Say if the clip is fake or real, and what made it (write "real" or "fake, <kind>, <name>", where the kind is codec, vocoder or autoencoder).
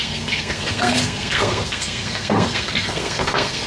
fake, codec, SNAC